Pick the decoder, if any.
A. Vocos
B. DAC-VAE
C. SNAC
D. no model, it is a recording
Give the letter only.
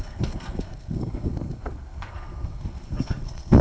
C